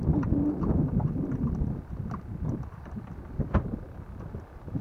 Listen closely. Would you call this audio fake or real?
real